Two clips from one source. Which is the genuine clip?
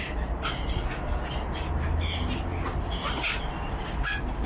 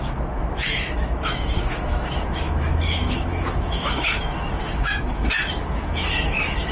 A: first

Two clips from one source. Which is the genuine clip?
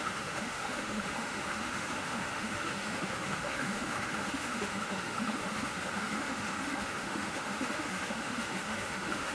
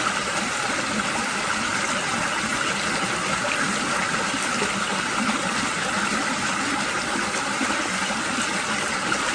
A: second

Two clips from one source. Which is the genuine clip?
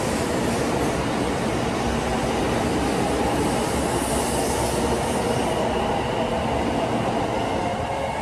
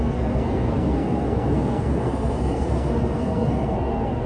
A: first